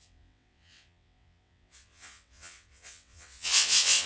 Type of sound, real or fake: fake